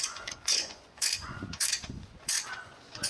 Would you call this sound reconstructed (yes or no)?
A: yes